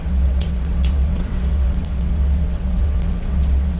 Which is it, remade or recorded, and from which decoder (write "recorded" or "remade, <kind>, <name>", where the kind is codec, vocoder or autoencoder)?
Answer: remade, vocoder, WaveNeXt